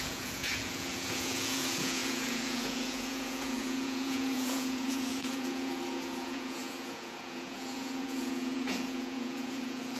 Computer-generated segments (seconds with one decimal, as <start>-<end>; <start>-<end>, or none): 0.0-10.0